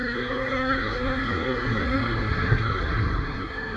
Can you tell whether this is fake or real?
fake